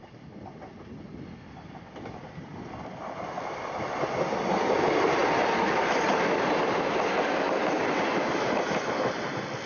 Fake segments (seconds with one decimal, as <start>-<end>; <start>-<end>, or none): 2.5-4.4